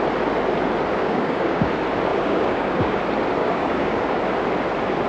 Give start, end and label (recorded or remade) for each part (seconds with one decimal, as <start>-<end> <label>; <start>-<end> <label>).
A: 0.0-0.9 recorded; 0.9-1.7 remade; 1.7-2.1 recorded; 2.1-3.0 remade; 3.0-3.4 recorded; 3.4-4.2 remade; 4.2-5.1 recorded